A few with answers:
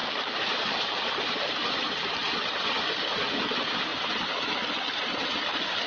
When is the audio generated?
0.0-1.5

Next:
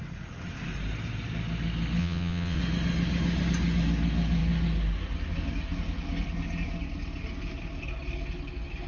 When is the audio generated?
2.0-2.6

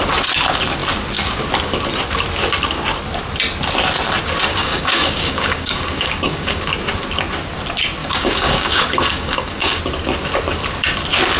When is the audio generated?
4.5-6.6; 8.0-9.8

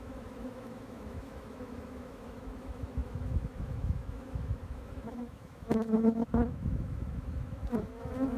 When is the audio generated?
0.0-8.4

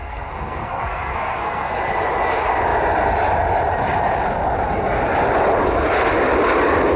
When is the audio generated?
0.0-1.7

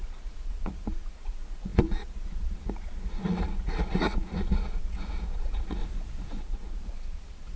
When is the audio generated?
0.0-5.8; 6.4-7.6